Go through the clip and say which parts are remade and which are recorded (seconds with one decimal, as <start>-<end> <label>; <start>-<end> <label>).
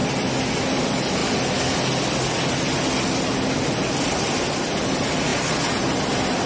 0.0-0.6 recorded; 0.6-1.2 remade; 1.2-4.8 recorded; 4.8-5.3 remade; 5.3-6.5 recorded